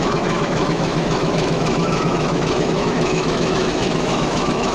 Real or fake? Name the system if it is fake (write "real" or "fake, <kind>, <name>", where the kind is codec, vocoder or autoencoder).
fake, autoencoder, DAC-VAE